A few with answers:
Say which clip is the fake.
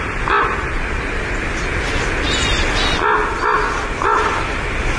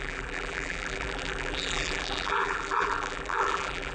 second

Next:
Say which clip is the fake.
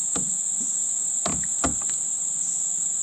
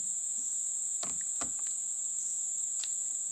second